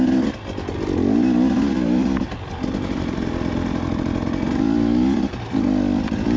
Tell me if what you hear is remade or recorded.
remade